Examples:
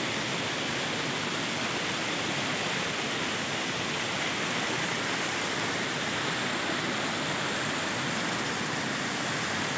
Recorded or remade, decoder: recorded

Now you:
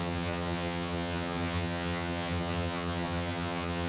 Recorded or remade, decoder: remade, vocoder, HiFi-GAN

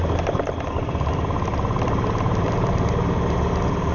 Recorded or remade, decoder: recorded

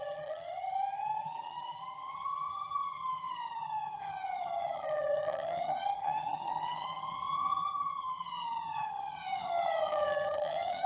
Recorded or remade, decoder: remade, vocoder, HiFi-GAN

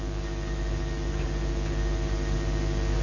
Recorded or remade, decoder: recorded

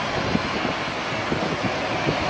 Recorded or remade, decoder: recorded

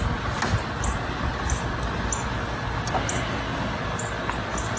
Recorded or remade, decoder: recorded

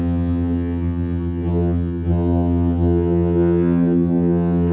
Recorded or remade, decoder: remade, vocoder, HiFi-GAN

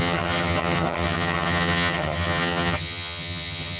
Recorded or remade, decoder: remade, vocoder, HiFi-GAN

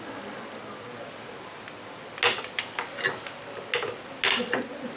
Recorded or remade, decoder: recorded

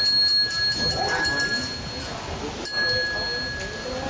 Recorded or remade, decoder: recorded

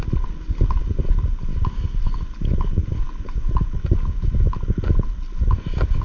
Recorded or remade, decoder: recorded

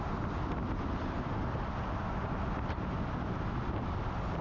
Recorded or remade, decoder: recorded